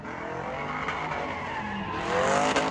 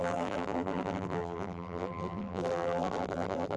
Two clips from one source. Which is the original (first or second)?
first